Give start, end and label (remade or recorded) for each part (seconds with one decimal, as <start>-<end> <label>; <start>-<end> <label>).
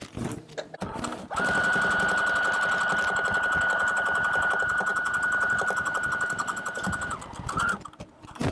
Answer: 0.0-8.5 recorded